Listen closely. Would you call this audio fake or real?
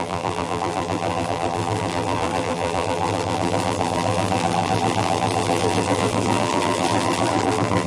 fake